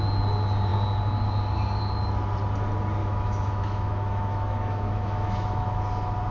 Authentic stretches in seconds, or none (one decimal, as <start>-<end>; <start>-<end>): 0.0-3.0; 5.8-6.3